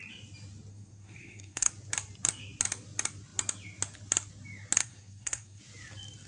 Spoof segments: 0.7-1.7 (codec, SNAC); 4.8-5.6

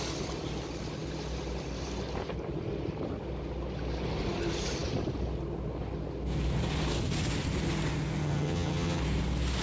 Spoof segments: 8.2-9.0 (vocoder, HiFi-GAN)

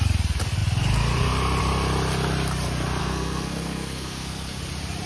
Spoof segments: 3.0-4.6 (codec, SNAC)

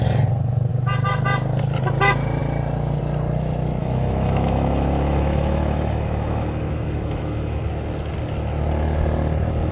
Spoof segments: 3.8-7.6 (autoencoder, DAC-VAE)

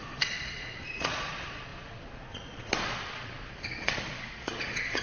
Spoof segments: 0.0-5.0 (vocoder, Vocos)

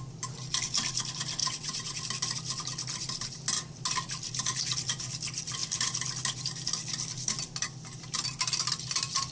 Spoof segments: 1.4-2.0 (vocoder, WaveNeXt)